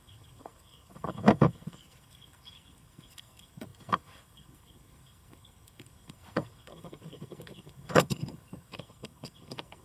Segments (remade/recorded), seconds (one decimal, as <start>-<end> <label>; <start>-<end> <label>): 0.0-9.8 remade